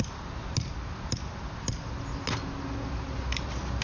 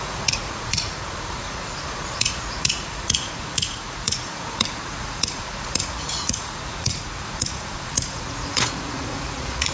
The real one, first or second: first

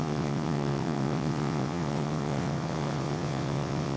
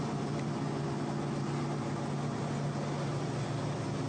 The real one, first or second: second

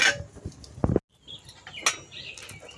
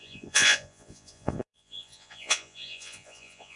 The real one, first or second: first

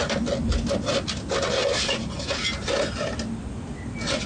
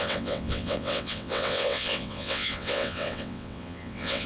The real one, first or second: first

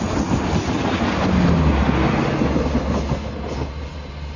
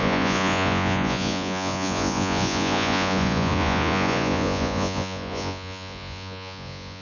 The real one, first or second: first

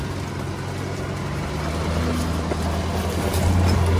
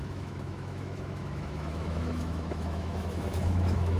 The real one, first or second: first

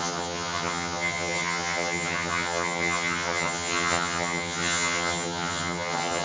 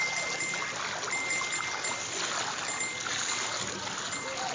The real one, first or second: second